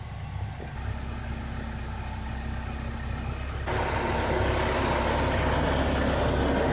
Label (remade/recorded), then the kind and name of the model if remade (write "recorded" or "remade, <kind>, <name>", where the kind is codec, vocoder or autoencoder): recorded